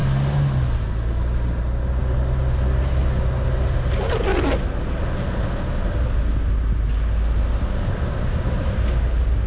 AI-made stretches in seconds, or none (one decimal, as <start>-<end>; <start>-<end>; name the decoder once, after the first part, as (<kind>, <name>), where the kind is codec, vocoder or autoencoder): none